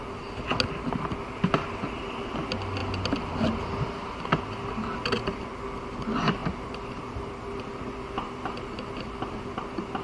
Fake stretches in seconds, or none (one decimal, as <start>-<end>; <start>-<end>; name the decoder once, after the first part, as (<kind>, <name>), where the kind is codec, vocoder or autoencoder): 6.4-7.6 (vocoder, BigVGAN v2)